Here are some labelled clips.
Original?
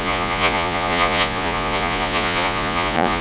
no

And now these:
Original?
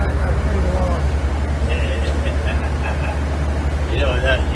yes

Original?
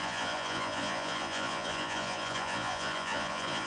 no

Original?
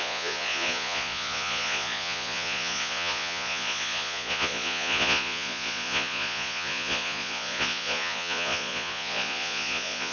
no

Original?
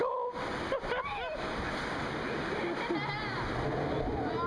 yes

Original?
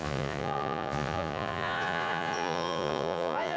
no